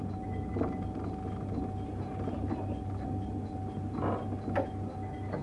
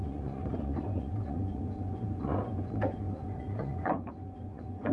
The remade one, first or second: second